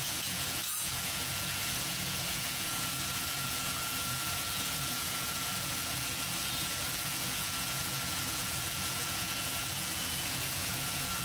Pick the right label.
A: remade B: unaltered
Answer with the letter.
A